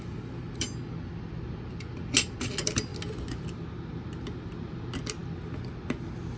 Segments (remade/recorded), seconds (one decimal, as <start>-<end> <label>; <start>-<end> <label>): 0.0-6.4 recorded